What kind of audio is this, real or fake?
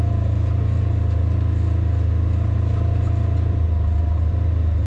real